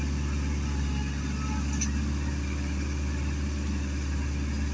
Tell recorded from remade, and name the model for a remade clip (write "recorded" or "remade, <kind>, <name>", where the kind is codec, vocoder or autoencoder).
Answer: recorded